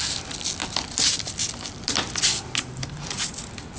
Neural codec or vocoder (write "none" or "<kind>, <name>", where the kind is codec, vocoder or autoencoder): none